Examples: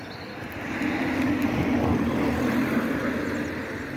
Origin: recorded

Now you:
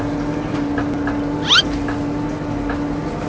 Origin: recorded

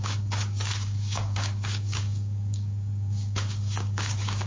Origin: remade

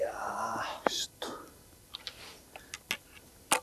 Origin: recorded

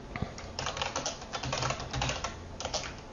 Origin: recorded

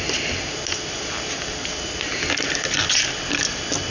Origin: recorded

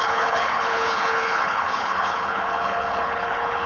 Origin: remade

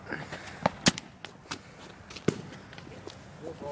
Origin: recorded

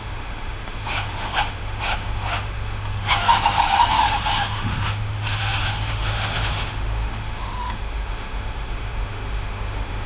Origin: remade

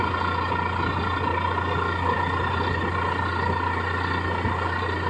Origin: recorded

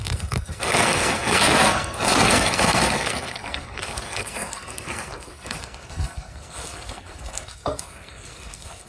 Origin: remade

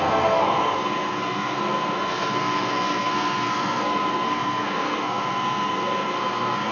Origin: remade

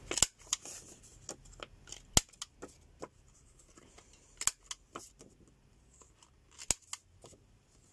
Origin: recorded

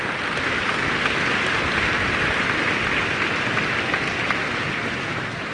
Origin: recorded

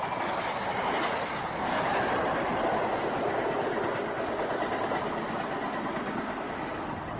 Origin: recorded